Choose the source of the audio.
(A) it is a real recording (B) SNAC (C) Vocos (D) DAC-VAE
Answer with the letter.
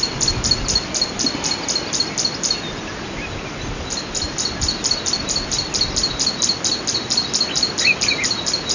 A